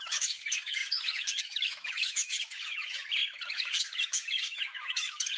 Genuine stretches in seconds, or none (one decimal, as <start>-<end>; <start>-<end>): none